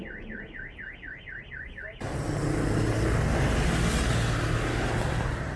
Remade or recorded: recorded